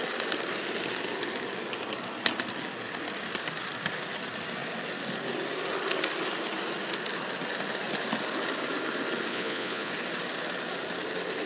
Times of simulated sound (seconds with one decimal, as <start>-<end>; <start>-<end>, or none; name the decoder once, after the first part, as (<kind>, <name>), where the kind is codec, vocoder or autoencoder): 9.3-9.9 (vocoder, Vocos)